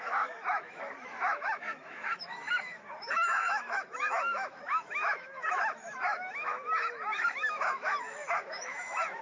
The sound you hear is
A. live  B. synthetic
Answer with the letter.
B